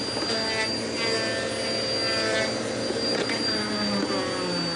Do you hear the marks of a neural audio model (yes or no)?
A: no